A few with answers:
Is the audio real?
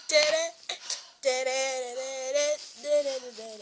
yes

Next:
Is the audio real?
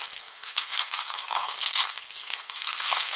no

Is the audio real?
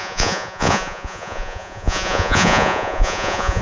no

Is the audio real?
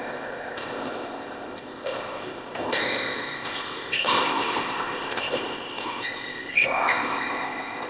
no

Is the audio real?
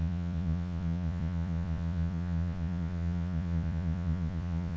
no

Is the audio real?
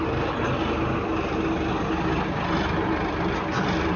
yes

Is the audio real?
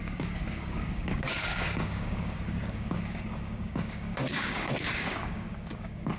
no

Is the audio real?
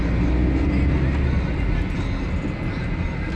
yes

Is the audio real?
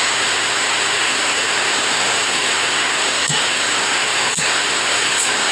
no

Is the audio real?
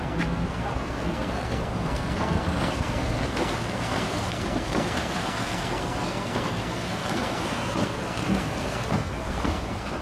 no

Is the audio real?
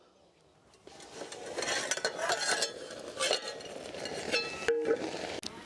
yes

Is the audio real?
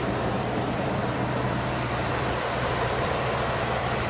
no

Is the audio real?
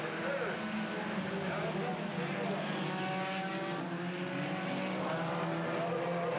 yes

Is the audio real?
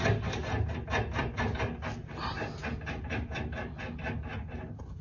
yes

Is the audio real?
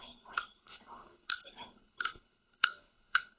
no